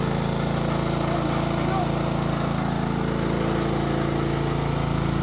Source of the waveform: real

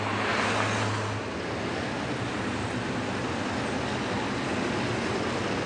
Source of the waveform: real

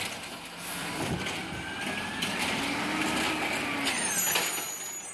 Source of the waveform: real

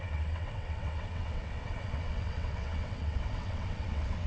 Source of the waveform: fake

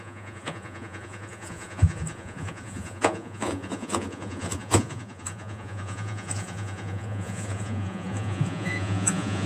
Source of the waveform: fake